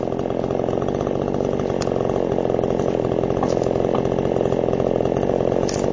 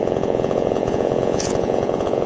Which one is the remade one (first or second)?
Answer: second